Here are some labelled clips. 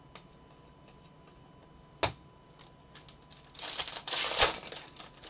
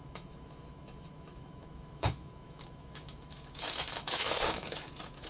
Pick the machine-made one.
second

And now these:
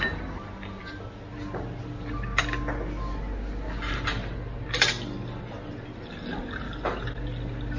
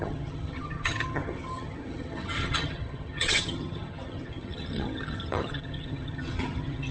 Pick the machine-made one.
second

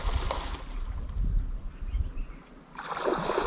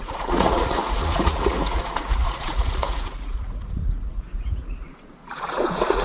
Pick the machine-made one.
second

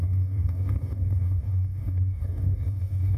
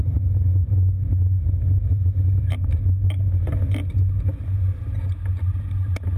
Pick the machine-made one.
first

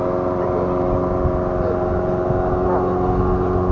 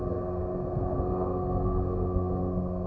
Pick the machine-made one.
second